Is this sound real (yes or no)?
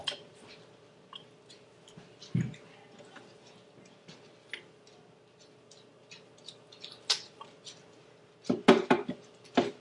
yes